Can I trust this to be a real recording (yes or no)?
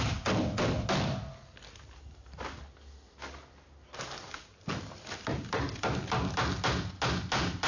yes